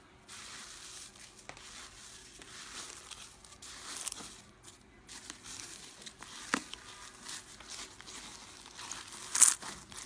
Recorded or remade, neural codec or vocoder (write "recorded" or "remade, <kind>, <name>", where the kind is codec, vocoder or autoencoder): recorded